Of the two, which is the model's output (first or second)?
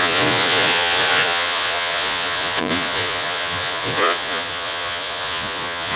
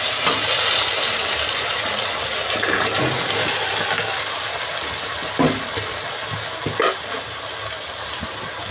first